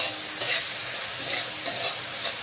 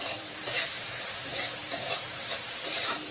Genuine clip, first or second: first